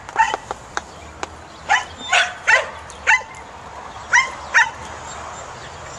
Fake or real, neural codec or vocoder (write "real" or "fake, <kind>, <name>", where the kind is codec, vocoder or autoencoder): real